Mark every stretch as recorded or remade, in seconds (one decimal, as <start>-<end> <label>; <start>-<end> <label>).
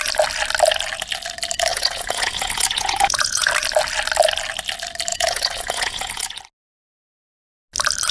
0.0-1.7 recorded; 1.7-3.5 remade; 3.5-5.1 recorded; 5.1-6.4 remade; 6.4-8.1 recorded